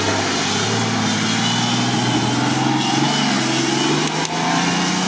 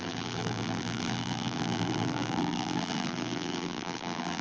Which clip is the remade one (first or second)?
second